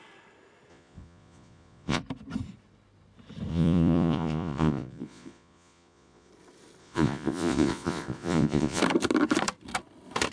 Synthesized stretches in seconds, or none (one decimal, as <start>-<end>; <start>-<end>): 0.7-2.0; 3.5-6.3; 6.8-8.8